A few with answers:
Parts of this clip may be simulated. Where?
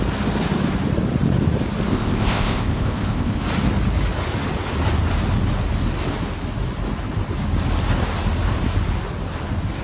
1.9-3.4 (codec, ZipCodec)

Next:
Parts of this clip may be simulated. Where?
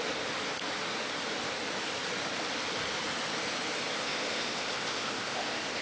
4.0-5.8 (codec, ZipCodec)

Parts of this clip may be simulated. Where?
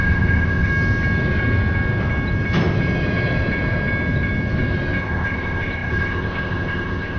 0.0-0.7 (codec, ZipCodec); 5.0-7.2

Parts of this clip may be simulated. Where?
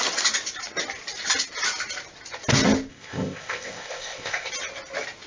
2.9-4.5 (codec, ZipCodec)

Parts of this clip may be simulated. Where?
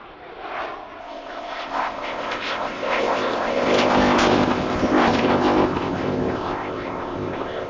1.0-7.7 (codec, ZipCodec)